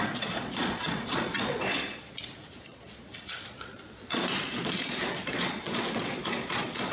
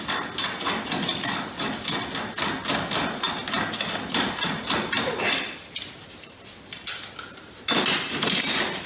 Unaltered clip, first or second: second